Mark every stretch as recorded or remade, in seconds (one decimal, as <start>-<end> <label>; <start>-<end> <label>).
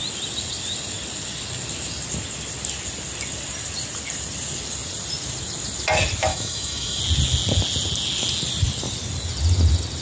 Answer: 0.0-6.3 recorded; 6.3-7.0 remade; 7.0-10.0 recorded